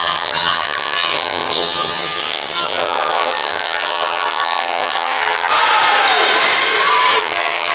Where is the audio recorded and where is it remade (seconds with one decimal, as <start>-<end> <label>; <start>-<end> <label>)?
0.0-5.5 remade; 5.5-7.2 recorded; 7.2-7.7 remade

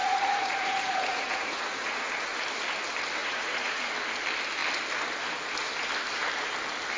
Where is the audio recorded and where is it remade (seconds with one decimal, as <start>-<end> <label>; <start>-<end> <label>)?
0.0-2.1 remade; 2.1-3.2 recorded; 3.2-3.8 remade; 3.8-7.0 recorded

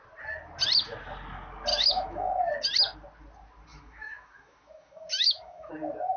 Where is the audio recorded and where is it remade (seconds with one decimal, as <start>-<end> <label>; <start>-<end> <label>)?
0.0-1.7 recorded; 1.7-2.3 remade; 2.3-3.7 recorded; 3.7-5.7 remade; 5.7-6.2 recorded

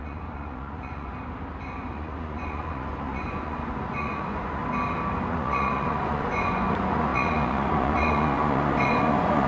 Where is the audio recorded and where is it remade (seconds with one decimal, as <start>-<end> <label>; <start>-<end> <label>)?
0.0-1.1 remade; 1.1-1.8 recorded; 1.8-4.6 remade; 4.6-5.3 recorded; 5.3-9.5 remade

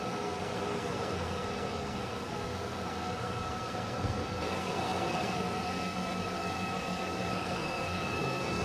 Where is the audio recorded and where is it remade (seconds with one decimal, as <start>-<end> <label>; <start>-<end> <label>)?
0.0-8.6 remade

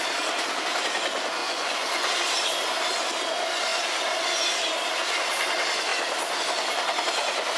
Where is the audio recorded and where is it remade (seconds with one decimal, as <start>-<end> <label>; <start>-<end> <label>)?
0.0-1.4 recorded; 1.4-2.1 remade; 2.1-7.6 recorded

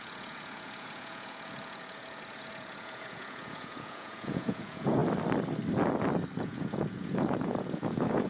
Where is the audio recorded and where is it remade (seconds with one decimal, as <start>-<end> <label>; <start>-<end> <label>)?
0.0-5.0 remade; 5.0-6.4 recorded; 6.4-8.3 remade